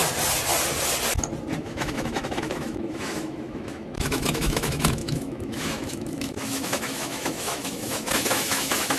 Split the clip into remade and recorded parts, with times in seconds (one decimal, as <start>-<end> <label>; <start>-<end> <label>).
0.0-1.6 recorded; 1.6-9.0 remade